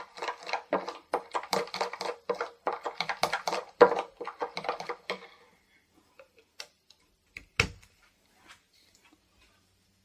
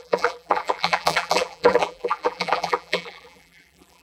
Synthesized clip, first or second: second